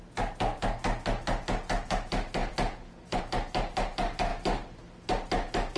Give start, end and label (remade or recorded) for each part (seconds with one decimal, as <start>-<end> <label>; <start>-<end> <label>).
0.0-2.4 recorded; 2.4-3.2 remade; 3.2-5.8 recorded